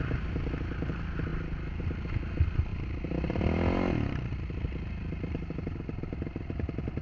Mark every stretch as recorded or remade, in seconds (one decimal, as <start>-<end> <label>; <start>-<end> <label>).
0.0-1.3 recorded; 1.3-1.8 remade; 1.8-2.7 recorded; 2.7-7.0 remade